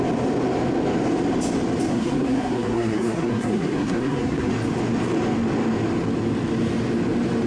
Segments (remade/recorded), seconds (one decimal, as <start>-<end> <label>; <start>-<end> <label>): 0.0-1.9 recorded; 1.9-4.5 remade; 4.5-7.5 recorded